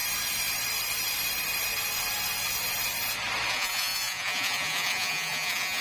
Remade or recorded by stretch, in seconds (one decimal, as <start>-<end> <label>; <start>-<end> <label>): 0.0-3.5 recorded; 3.5-5.8 remade